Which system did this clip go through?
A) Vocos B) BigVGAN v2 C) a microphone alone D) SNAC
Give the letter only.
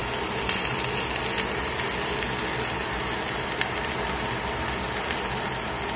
C